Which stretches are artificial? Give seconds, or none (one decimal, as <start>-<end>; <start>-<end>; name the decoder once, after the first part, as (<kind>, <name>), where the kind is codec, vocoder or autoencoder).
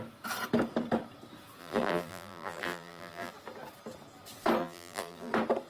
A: 1.6-3.3 (vocoder, BigVGAN v2); 4.6-5.3